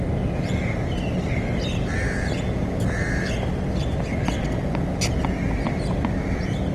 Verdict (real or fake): real